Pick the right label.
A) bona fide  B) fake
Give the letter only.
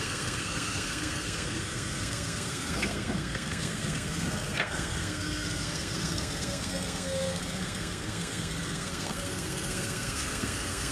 B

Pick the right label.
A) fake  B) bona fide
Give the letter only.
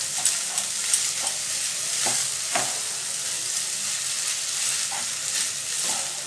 B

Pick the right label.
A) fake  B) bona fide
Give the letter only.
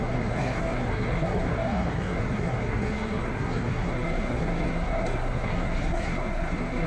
A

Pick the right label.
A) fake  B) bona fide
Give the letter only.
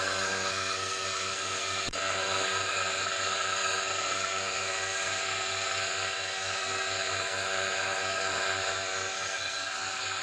A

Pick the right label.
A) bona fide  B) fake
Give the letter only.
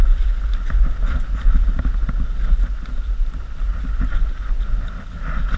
A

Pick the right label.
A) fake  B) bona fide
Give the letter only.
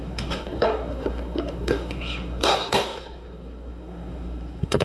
A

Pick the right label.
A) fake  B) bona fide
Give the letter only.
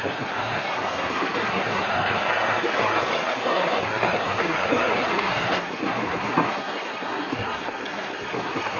A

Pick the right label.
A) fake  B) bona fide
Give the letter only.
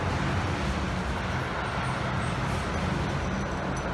B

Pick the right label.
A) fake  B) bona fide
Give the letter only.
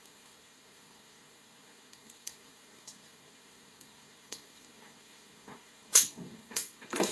A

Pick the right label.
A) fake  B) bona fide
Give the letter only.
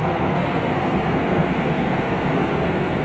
A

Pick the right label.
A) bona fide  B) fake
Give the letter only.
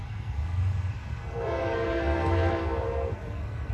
B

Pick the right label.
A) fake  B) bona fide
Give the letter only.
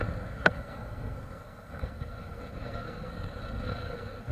A